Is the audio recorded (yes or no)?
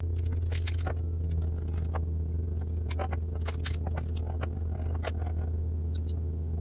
yes